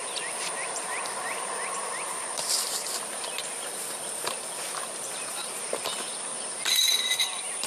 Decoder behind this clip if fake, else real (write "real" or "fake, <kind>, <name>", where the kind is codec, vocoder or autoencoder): fake, vocoder, BigVGAN v2